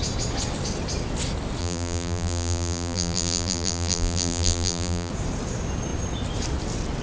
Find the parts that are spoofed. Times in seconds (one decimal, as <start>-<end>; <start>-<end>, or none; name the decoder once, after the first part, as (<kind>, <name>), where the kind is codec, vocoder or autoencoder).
1.6-5.1 (vocoder, BigVGAN v2)